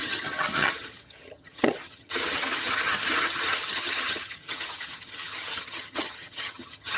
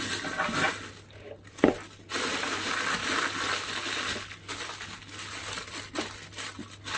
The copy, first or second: first